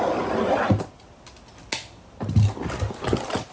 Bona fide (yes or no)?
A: yes